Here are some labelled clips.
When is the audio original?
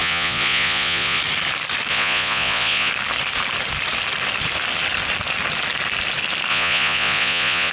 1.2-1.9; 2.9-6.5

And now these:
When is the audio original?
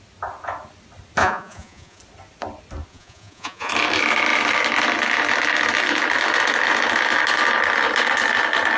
0.0-1.2; 2.0-2.9; 3.7-8.8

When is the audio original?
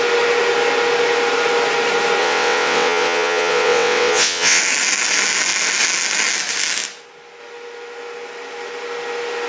0.0-2.2; 4.6-9.5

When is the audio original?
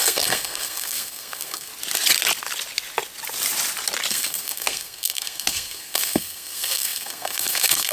1.7-4.1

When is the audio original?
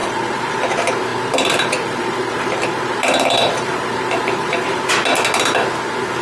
0.6-1.1; 4.8-6.2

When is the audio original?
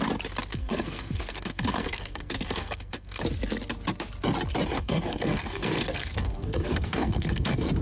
0.0-0.5; 3.2-4.7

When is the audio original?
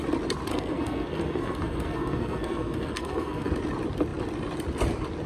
0.0-0.5; 3.5-5.3